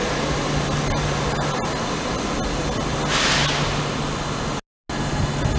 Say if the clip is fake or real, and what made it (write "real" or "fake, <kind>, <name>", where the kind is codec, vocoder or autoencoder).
real